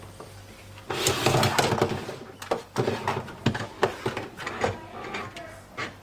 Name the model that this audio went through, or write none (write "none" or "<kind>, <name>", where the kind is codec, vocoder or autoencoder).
none